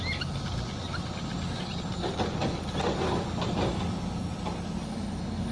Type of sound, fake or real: real